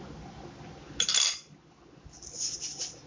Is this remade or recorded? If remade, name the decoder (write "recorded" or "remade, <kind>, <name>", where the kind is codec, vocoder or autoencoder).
recorded